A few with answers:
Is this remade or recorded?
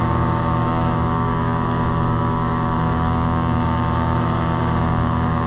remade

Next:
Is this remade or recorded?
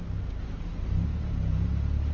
recorded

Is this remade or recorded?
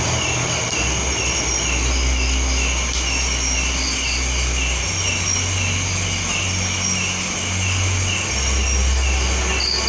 recorded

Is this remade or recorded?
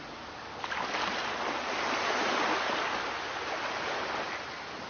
recorded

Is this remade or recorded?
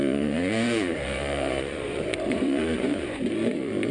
remade